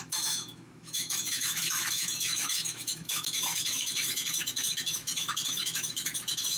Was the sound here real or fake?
fake